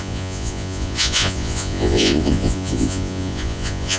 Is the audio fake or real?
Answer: fake